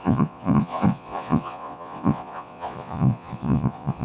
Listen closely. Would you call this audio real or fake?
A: fake